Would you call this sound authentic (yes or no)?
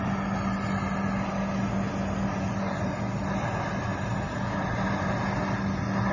yes